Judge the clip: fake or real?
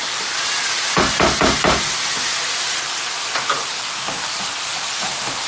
real